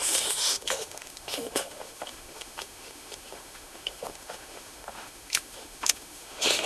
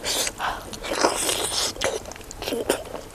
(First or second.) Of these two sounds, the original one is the second